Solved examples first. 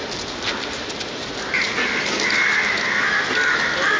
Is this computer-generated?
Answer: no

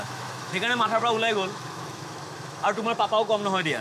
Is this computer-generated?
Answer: yes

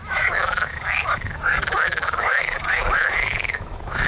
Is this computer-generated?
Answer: yes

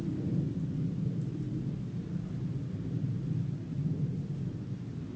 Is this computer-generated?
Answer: no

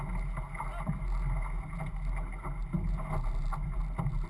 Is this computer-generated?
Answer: no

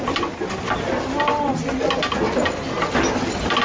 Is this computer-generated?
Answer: no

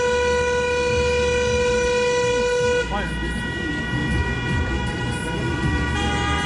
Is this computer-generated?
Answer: no